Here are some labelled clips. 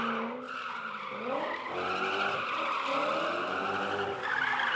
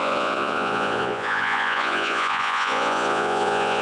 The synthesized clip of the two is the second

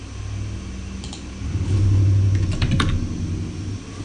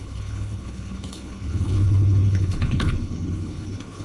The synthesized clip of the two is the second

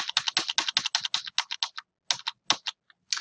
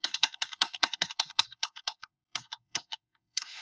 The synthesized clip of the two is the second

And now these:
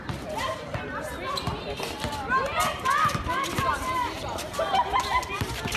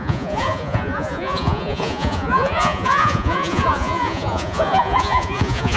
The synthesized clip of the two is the second